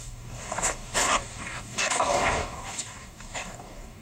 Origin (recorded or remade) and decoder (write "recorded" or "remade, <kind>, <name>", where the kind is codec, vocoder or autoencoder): remade, codec, DAC